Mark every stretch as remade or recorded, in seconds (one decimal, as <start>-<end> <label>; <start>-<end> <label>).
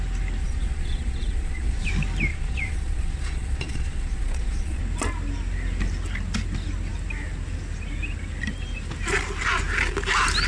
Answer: 0.0-0.4 recorded; 0.4-1.9 remade; 1.9-2.3 recorded; 2.3-4.8 remade; 4.8-10.5 recorded